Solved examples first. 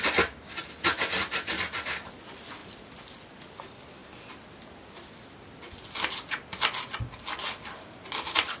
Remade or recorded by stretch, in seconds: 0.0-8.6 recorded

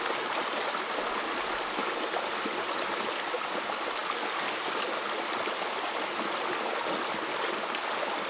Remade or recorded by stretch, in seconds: 0.0-8.3 recorded

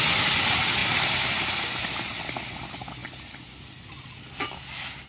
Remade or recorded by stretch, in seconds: 0.0-5.1 recorded